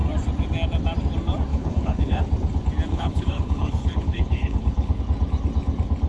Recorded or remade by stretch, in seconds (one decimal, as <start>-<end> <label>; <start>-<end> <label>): 0.0-1.5 recorded; 1.5-2.2 remade; 2.2-2.9 recorded; 2.9-5.0 remade; 5.0-6.1 recorded